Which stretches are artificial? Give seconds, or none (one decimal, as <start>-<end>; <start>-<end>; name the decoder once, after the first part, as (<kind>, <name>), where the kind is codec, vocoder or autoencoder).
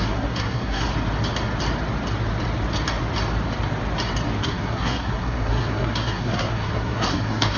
0.0-0.9 (codec, SNAC); 4.4-7.6